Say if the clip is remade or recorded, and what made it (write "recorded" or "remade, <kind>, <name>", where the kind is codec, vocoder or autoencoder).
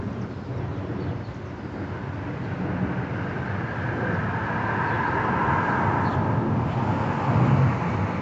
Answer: recorded